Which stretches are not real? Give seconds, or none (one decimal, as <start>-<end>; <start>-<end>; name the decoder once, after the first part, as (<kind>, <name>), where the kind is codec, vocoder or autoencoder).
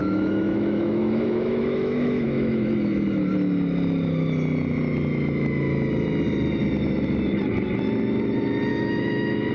0.0-2.7 (autoencoder, DAC-VAE); 8.7-9.5